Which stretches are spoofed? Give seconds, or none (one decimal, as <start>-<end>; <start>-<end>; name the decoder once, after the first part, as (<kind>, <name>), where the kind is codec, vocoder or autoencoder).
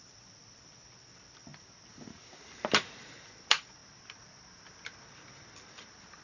0.0-1.5 (vocoder, BigVGAN v2); 2.7-3.8; 5.3-6.2